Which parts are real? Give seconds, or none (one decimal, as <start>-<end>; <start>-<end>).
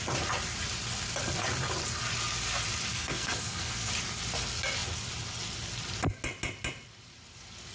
0.0-2.9; 3.9-7.7